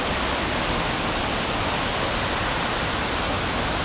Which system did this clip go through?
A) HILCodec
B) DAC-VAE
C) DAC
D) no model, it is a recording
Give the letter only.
D